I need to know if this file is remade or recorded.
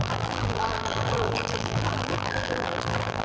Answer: remade